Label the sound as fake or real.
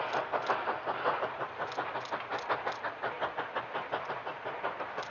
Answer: real